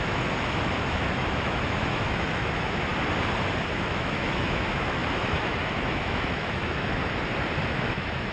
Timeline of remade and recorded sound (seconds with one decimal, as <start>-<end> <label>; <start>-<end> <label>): 0.0-2.9 remade; 2.9-3.8 recorded; 3.8-7.0 remade; 7.0-7.6 recorded; 7.6-8.3 remade